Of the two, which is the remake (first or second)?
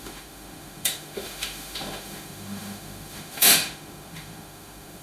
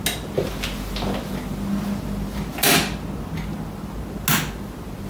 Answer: first